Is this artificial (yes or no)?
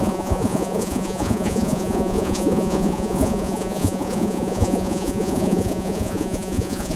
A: yes